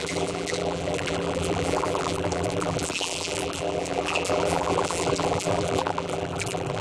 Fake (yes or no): yes